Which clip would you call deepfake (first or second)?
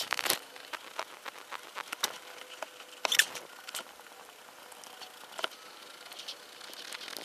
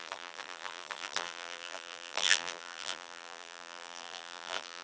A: second